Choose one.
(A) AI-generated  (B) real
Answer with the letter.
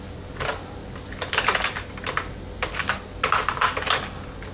B